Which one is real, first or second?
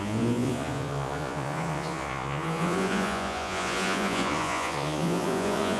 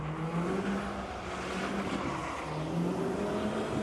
second